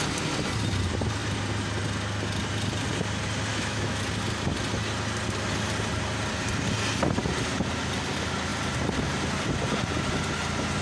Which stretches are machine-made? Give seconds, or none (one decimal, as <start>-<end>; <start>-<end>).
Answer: 3.5-4.0